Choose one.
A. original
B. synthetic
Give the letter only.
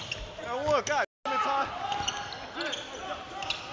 A